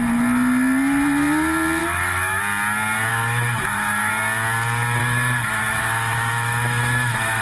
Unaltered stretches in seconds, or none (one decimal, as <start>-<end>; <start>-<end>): 0.0-1.8; 2.4-3.1; 4.1-5.0